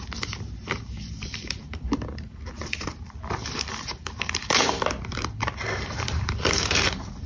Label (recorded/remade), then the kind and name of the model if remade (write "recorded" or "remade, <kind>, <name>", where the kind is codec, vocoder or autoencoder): remade, vocoder, BigVGAN v2